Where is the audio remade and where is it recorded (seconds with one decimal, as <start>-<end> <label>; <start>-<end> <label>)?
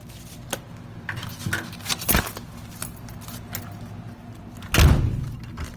0.0-5.8 recorded